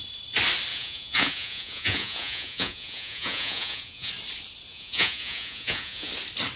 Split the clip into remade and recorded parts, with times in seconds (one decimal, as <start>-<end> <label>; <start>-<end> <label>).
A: 0.0-0.7 recorded; 0.7-4.1 remade; 4.1-4.7 recorded; 4.7-6.1 remade; 6.1-6.6 recorded